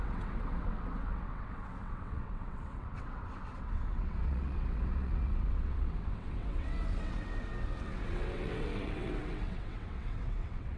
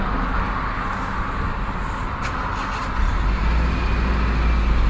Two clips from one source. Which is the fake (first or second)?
first